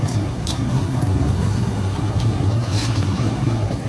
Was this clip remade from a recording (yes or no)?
yes